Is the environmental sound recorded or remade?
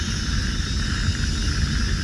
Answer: recorded